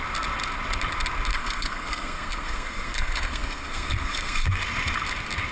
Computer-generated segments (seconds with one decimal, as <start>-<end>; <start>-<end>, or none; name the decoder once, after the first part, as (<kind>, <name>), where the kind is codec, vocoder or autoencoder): 1.3-4.6 (codec, SNAC)